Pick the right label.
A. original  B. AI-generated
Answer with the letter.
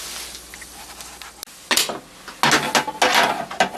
A